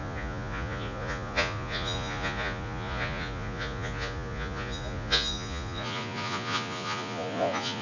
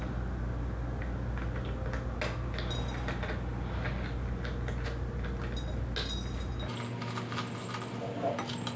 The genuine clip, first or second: second